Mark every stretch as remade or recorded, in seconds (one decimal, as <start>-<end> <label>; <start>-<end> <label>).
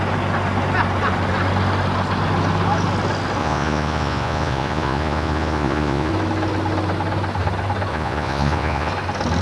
0.0-3.4 recorded; 3.4-6.1 remade; 6.1-7.9 recorded; 7.9-8.9 remade; 8.9-9.4 recorded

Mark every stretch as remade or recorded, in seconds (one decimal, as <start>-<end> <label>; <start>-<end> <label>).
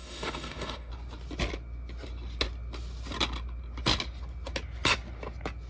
0.0-0.9 remade; 0.9-5.7 recorded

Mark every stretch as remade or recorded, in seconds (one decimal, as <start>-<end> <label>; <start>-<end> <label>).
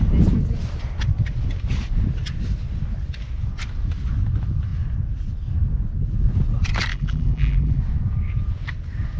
0.0-6.9 recorded; 6.9-7.8 remade; 7.8-9.2 recorded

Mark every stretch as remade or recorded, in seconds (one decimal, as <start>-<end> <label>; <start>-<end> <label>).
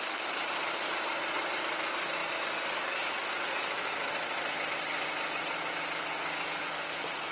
0.0-2.2 remade; 2.2-6.6 recorded; 6.6-7.3 remade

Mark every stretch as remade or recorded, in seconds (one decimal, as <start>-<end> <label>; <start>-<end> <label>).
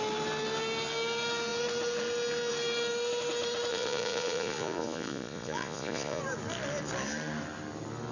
0.0-3.7 recorded; 3.7-6.2 remade; 6.2-8.1 recorded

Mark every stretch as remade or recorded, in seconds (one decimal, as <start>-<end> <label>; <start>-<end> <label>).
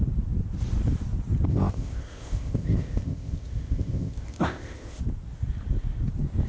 0.0-1.5 recorded; 1.5-5.0 remade; 5.0-6.5 recorded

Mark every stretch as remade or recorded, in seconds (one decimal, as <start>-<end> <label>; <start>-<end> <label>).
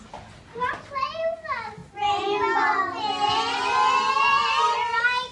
0.0-5.3 recorded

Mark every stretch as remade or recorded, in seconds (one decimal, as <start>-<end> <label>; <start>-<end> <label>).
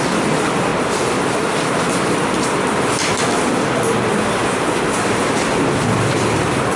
0.0-4.4 recorded; 4.4-6.8 remade